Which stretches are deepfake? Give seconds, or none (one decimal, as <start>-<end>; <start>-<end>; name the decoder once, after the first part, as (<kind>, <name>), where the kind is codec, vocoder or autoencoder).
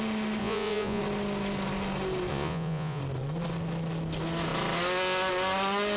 0.4-1.0 (vocoder, Vocos); 2.3-3.0